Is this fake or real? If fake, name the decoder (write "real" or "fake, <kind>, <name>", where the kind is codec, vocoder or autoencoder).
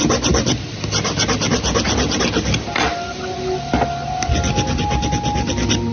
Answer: real